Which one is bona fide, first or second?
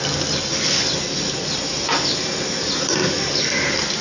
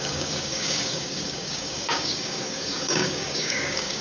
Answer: first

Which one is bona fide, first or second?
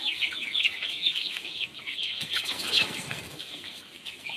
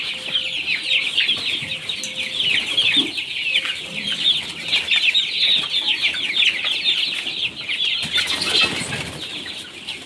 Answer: second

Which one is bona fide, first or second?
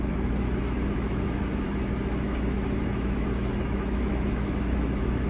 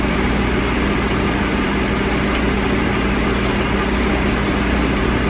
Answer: second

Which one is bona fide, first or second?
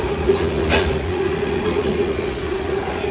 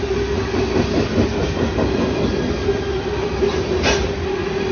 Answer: second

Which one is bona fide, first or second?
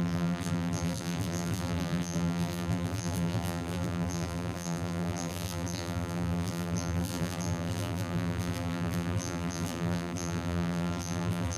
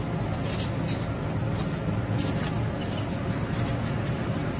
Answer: second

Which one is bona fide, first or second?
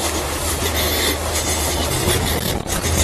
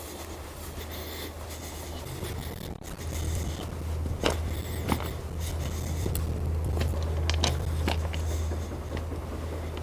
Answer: second